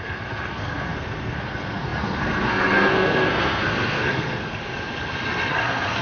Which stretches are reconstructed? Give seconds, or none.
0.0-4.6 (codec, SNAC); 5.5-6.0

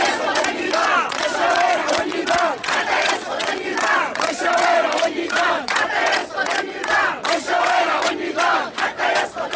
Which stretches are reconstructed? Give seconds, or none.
0.0-9.6 (vocoder, WaveNeXt)